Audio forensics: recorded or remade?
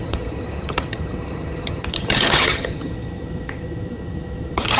remade